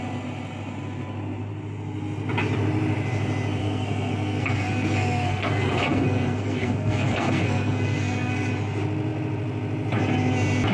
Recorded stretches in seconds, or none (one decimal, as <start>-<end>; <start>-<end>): 0.0-3.6; 8.5-10.7